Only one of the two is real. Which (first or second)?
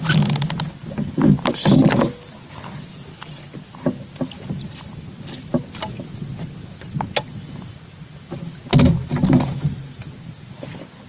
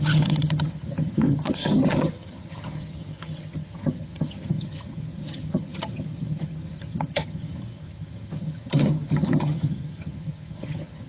first